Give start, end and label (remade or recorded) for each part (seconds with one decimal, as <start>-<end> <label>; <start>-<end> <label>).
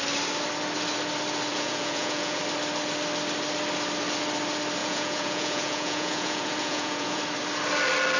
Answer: 0.0-1.5 recorded; 1.5-2.4 remade; 2.4-4.8 recorded; 4.8-7.2 remade; 7.2-8.2 recorded